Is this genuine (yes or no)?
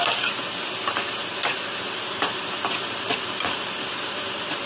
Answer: yes